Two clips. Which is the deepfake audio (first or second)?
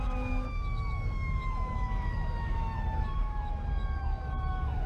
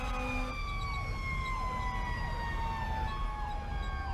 first